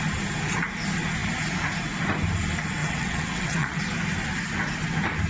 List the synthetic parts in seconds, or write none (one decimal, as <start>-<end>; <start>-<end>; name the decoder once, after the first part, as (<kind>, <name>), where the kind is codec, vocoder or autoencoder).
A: 2.8-3.8 (vocoder, WaveNeXt)